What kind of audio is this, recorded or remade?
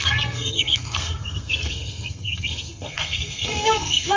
remade